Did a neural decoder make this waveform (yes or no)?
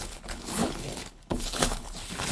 yes